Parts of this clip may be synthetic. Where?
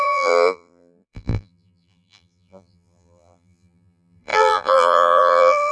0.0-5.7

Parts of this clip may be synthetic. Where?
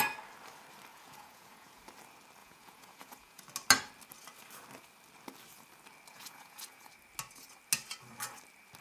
0.9-1.8; 2.4-3.4; 6.1-6.9